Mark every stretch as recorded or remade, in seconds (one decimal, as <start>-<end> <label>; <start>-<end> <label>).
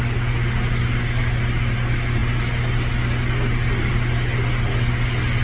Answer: 0.0-5.4 recorded